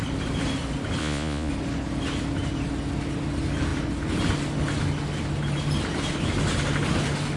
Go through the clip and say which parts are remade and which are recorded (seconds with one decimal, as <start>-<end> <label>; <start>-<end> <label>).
0.0-1.0 recorded; 1.0-1.5 remade; 1.5-7.4 recorded